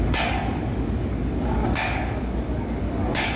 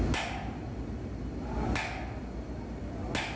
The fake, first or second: first